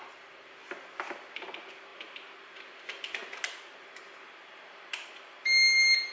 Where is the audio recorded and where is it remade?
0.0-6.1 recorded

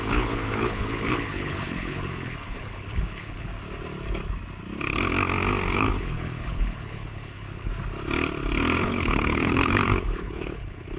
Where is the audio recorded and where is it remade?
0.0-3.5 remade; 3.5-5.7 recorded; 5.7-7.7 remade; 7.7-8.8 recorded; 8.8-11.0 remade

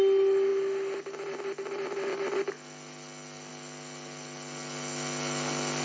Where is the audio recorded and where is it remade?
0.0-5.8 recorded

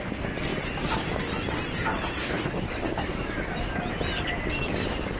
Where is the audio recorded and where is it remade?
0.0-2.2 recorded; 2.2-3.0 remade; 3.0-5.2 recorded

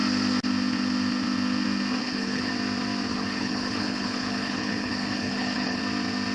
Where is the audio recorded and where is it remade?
0.0-2.0 recorded; 2.0-2.5 remade; 2.5-3.1 recorded; 3.1-5.8 remade; 5.8-6.3 recorded

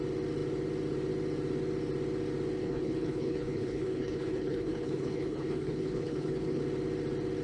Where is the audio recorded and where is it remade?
0.0-2.6 recorded; 2.6-6.6 remade; 6.6-7.4 recorded

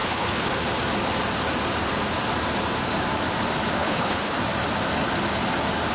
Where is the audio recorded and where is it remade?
0.0-0.5 remade; 0.5-3.8 recorded; 3.8-4.4 remade; 4.4-5.9 recorded